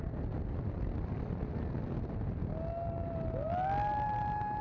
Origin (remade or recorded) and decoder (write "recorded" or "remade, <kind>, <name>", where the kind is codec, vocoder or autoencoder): recorded